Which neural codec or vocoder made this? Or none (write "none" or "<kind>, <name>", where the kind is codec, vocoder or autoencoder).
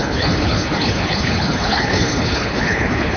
codec, HILCodec